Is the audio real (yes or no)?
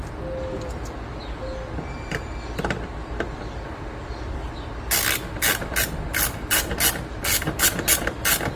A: yes